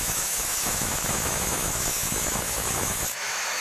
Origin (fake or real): fake